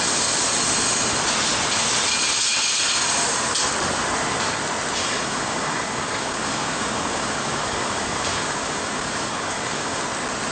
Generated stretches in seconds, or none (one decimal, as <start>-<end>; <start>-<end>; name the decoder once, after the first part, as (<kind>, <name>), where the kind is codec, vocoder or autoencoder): 5.0-10.0 (codec, DAC)